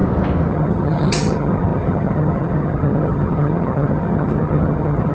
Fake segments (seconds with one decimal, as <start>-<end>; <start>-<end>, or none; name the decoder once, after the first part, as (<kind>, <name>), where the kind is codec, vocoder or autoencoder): 0.5-5.1 (vocoder, HiFi-GAN)